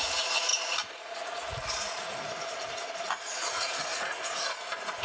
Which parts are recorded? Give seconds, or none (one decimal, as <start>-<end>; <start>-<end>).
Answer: none

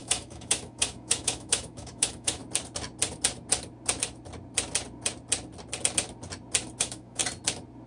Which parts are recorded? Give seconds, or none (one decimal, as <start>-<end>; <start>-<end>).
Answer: 2.4-6.8; 7.2-7.9

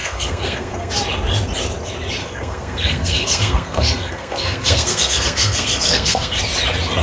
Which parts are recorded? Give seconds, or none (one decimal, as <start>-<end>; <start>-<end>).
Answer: 0.9-2.2; 6.4-7.0

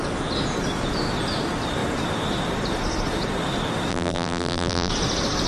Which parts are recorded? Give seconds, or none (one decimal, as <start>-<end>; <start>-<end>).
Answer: 0.0-3.9; 4.9-5.5

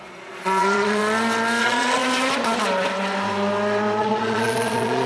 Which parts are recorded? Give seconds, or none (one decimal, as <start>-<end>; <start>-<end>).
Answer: 1.0-1.6; 2.0-4.0

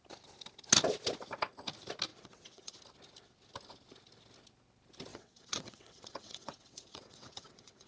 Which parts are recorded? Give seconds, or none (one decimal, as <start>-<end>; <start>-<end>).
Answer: 0.0-2.1; 2.8-5.1

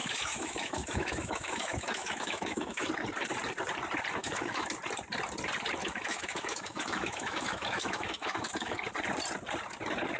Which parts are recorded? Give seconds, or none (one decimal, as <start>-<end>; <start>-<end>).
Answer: 2.9-4.2; 4.7-5.8; 8.8-10.2